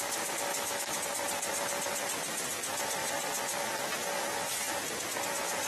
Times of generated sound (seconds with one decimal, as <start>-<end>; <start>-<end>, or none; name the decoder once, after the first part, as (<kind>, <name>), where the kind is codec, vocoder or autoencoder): 0.5-1.0 (autoencoder, DAC-VAE)